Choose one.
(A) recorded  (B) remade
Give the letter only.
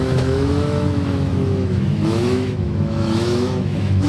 B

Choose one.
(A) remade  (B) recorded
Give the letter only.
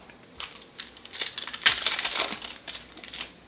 B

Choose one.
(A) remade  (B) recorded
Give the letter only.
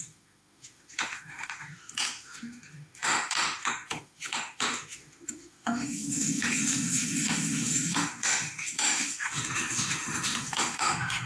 A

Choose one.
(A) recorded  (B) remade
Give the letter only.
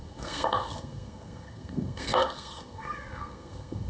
B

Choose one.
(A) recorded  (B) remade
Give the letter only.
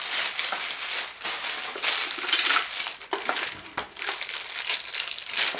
A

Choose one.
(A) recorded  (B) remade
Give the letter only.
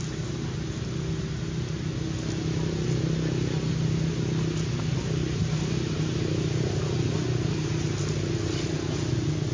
A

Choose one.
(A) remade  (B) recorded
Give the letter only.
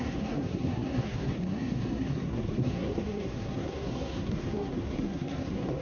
A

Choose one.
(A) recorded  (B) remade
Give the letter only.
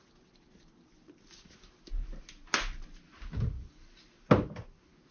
A